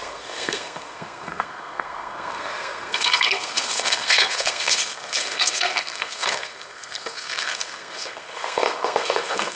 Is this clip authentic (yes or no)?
no